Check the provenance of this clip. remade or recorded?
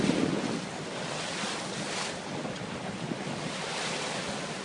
recorded